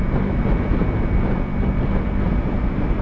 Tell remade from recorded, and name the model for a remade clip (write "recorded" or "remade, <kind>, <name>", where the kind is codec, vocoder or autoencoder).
recorded